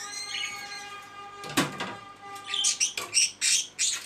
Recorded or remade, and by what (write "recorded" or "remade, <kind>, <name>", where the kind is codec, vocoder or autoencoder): recorded